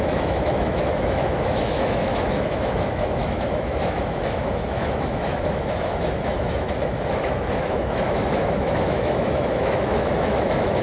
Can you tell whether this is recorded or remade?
remade